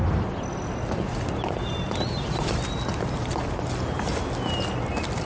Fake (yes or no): no